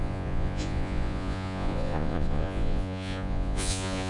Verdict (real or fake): fake